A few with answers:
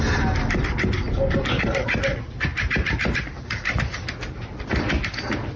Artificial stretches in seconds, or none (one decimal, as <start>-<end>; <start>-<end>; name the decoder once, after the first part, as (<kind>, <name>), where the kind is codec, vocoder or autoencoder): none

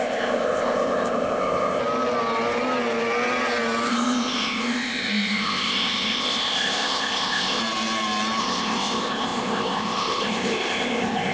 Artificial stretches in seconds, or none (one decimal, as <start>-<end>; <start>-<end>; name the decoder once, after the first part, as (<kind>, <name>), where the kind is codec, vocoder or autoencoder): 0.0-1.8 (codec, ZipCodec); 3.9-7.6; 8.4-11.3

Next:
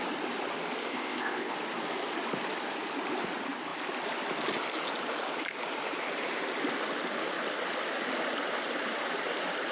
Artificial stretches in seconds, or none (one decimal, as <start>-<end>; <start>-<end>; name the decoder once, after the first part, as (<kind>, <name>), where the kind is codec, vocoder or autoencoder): 0.8-1.5 (codec, ZipCodec)